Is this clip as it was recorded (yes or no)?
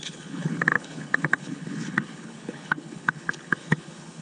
no